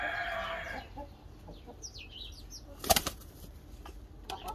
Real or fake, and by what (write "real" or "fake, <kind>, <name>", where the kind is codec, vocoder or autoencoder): real